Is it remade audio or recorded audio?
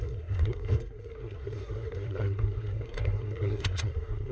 remade